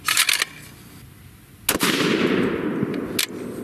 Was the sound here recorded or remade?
recorded